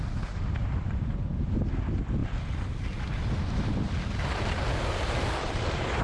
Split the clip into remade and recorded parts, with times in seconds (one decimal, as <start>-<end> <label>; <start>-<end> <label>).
0.0-0.6 recorded; 0.6-1.5 remade; 1.5-2.2 recorded; 2.2-6.0 remade